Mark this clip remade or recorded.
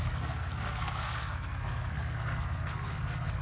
remade